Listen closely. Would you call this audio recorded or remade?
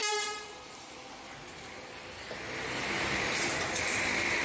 recorded